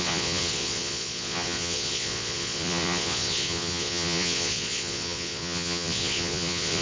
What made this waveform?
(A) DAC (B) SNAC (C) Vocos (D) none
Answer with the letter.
C